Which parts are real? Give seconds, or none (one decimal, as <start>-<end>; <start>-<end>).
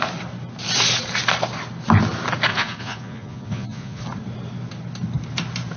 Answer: 0.0-2.5; 4.0-5.8